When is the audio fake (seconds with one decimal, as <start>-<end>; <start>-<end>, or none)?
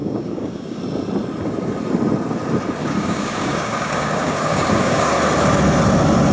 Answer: 0.0-0.8; 2.8-5.1